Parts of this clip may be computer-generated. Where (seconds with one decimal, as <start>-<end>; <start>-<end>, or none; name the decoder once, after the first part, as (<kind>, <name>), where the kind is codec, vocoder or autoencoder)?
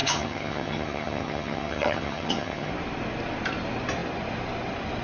0.0-2.7 (vocoder, HiFi-GAN)